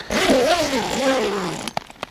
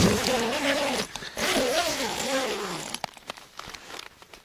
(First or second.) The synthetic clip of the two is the second